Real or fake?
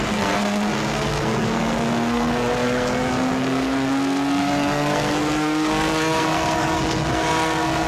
fake